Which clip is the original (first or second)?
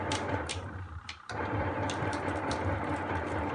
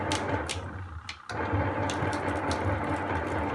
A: second